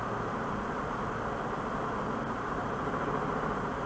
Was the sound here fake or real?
real